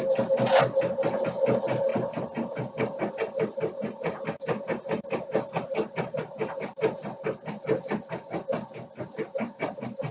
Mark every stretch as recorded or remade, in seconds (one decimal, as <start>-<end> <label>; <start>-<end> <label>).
0.0-10.1 recorded

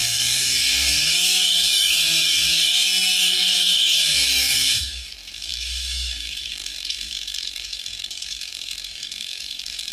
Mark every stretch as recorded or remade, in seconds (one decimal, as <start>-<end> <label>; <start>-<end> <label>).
0.0-9.9 remade

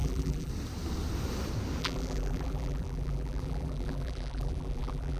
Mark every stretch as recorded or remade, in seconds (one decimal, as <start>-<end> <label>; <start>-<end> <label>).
0.0-0.5 remade; 0.5-1.8 recorded; 1.8-5.2 remade

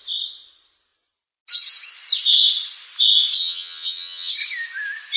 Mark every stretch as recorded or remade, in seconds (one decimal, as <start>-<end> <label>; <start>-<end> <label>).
0.0-3.4 recorded; 3.4-4.3 remade; 4.3-5.2 recorded

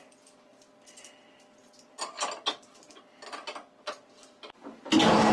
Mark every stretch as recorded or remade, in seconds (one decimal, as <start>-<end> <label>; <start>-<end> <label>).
0.0-5.3 recorded